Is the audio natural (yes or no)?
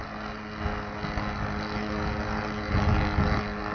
yes